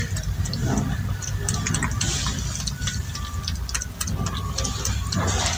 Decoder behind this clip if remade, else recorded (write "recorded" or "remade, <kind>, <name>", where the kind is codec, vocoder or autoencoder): recorded